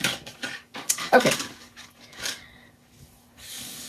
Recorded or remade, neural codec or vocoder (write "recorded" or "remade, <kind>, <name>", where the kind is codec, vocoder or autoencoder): remade, codec, DAC